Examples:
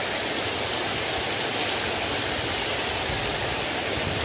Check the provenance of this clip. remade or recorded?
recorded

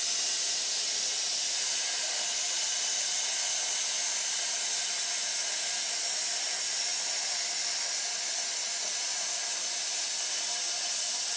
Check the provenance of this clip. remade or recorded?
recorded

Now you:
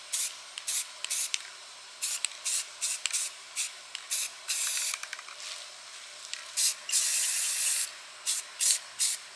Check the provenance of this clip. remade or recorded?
recorded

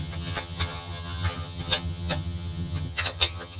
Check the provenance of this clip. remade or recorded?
remade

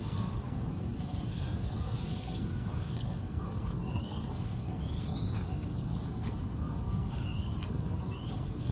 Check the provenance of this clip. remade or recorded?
remade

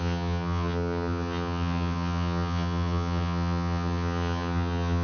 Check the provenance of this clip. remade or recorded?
remade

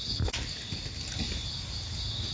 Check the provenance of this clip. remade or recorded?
recorded